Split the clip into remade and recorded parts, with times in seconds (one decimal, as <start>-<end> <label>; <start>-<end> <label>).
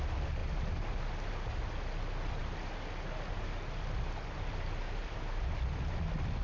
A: 0.0-6.4 recorded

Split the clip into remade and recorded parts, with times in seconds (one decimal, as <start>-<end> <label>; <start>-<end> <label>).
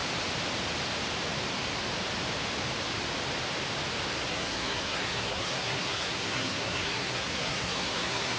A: 0.0-4.3 recorded; 4.3-8.4 remade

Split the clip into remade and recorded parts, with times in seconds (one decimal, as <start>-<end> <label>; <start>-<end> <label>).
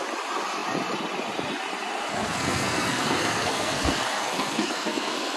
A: 0.0-2.1 recorded; 2.1-5.4 remade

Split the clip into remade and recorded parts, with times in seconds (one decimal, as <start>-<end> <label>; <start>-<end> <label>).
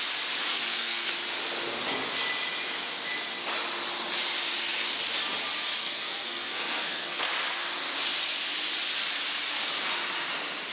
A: 0.0-0.5 recorded; 0.5-1.1 remade; 1.1-5.8 recorded; 5.8-7.2 remade; 7.2-10.7 recorded